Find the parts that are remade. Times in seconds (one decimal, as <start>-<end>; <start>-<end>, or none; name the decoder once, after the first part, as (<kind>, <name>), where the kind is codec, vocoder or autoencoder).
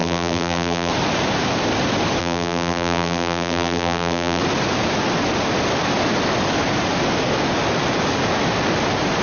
0.0-0.9 (vocoder, BigVGAN v2); 2.2-4.4